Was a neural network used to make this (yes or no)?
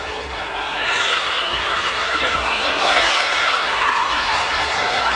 yes